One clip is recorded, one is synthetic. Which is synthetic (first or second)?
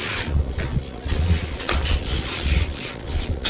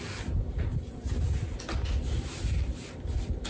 first